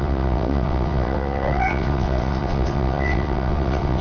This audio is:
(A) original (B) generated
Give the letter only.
B